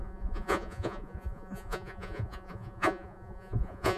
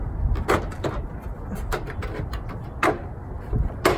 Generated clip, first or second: first